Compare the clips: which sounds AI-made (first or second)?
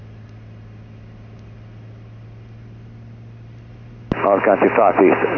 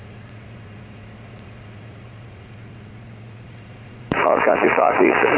second